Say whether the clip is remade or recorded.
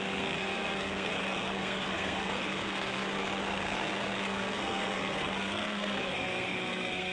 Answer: remade